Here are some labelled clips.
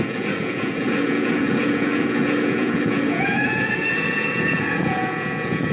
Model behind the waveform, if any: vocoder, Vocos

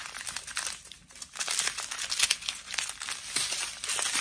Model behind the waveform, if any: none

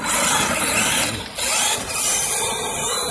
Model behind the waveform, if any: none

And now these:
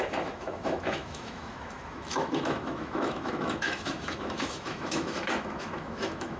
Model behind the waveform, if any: autoencoder, DAC-VAE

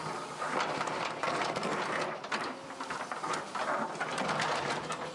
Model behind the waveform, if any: none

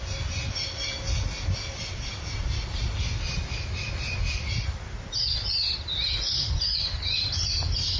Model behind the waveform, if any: none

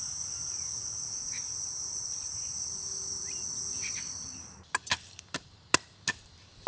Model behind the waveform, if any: none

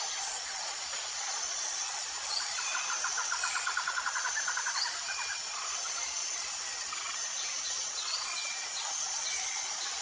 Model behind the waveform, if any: vocoder, Vocos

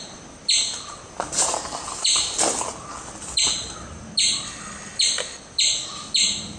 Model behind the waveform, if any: none